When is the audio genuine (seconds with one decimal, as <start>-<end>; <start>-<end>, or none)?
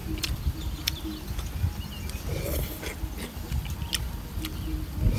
0.0-5.2